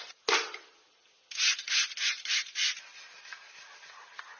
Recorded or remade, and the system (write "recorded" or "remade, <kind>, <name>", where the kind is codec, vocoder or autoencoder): recorded